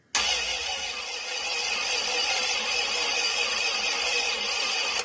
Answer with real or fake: real